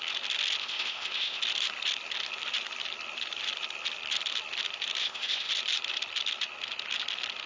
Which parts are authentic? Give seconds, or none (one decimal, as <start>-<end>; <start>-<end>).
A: 0.0-0.6; 1.4-5.0; 5.5-7.5